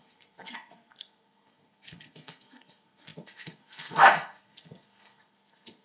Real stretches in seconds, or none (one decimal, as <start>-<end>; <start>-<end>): none